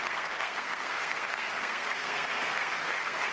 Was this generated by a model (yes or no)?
yes